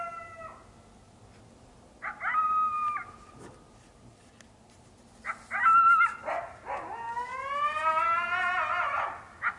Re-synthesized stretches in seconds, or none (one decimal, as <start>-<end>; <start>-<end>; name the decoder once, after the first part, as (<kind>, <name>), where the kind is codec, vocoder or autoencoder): none